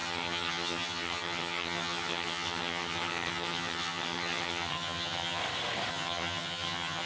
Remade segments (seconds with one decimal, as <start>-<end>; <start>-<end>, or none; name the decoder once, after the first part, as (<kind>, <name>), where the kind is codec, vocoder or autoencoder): 0.0-5.4 (vocoder, HiFi-GAN); 5.9-7.1